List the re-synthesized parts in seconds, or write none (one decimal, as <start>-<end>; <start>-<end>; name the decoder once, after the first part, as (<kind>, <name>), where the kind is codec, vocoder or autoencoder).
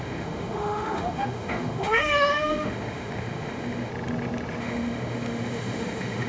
0.0-3.9 (autoencoder, DAC-VAE); 4.6-6.3